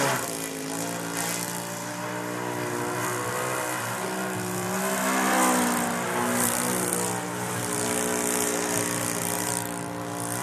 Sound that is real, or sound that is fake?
real